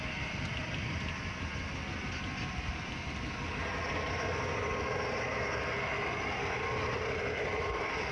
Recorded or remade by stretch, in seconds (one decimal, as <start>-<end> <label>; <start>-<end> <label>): 0.0-1.5 remade; 1.5-6.2 recorded; 6.2-8.1 remade